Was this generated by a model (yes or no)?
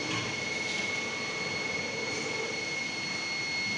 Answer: no